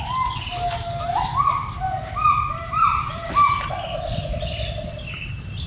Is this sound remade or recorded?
recorded